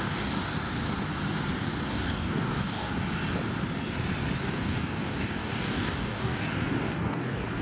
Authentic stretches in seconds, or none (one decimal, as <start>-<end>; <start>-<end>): 0.4-1.9; 2.9-4.4